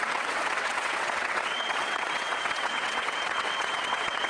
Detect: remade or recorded remade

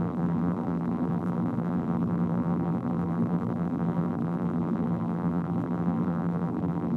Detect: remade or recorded remade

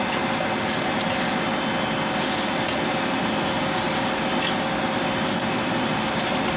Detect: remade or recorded recorded